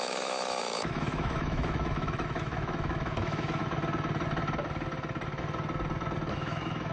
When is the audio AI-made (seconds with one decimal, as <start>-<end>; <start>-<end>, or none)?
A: 0.0-3.6; 6.3-6.9